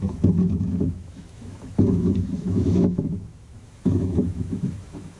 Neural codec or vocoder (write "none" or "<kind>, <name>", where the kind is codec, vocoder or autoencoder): autoencoder, DAC-VAE